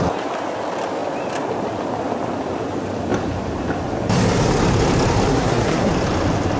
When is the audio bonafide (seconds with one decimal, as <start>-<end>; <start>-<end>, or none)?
0.0-5.3; 5.9-6.6